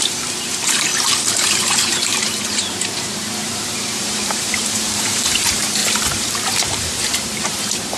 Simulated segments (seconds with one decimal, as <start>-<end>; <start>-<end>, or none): 0.0-8.0